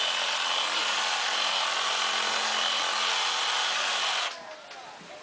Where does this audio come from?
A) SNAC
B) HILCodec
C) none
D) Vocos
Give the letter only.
C